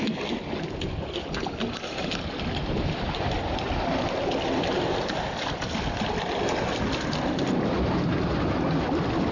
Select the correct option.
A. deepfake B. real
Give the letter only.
B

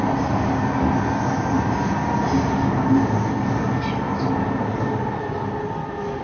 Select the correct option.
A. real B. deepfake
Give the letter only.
A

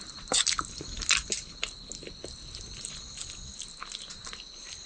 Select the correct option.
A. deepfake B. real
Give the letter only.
B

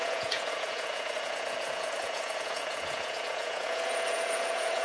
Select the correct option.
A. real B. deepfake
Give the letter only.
B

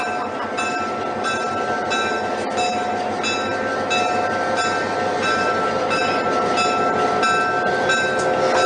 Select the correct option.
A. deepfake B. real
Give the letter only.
B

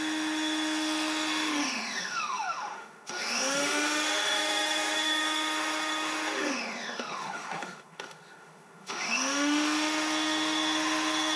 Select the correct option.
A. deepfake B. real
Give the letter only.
A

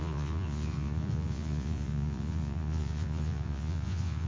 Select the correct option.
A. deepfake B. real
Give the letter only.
A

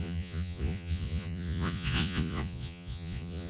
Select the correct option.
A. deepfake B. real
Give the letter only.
A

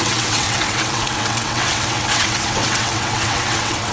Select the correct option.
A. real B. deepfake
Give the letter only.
B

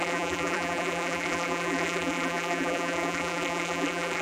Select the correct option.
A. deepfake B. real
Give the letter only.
A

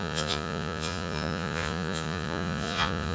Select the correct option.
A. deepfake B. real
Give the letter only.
A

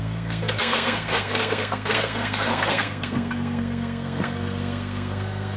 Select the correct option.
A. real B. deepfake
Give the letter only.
B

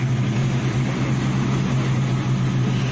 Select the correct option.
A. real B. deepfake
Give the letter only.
A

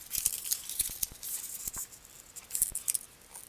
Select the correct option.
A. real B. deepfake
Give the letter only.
A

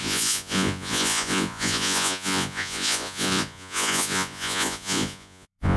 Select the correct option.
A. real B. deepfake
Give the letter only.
B